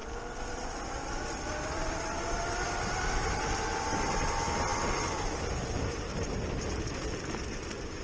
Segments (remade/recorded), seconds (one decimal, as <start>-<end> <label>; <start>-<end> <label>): 0.0-8.0 recorded

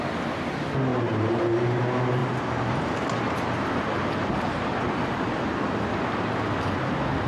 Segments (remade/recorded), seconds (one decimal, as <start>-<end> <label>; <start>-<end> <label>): 0.0-0.9 recorded; 0.9-1.8 remade; 1.8-2.2 recorded; 2.2-2.7 remade; 2.7-4.2 recorded; 4.2-4.7 remade; 4.7-7.3 recorded

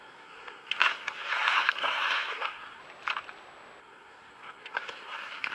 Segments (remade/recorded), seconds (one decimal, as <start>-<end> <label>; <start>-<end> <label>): 0.0-2.8 remade; 2.8-3.8 recorded; 3.8-5.5 remade

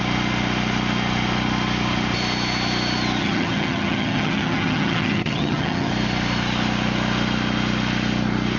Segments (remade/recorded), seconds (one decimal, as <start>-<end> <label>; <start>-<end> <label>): 0.0-3.2 recorded; 3.2-5.9 remade; 5.9-8.6 recorded

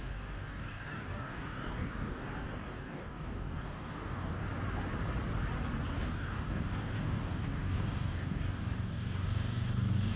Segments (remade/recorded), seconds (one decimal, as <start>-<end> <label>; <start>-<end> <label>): 0.0-4.4 remade; 4.4-6.0 recorded; 6.0-10.2 remade

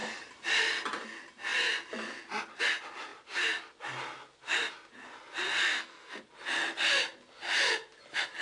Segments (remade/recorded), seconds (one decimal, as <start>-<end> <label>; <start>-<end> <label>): 0.0-5.6 recorded; 5.6-6.2 remade; 6.2-8.4 recorded